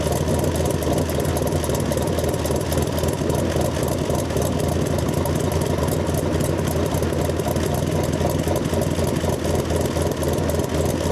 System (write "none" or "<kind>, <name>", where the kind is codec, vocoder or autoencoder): none